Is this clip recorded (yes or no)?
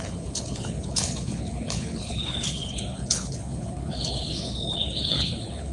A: no